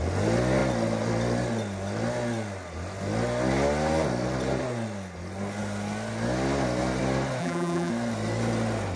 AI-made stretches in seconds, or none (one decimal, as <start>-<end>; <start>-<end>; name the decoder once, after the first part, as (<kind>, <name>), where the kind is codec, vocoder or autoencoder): 7.4-7.9 (vocoder, BigVGAN v2)